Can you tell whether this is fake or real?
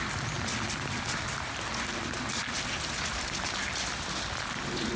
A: real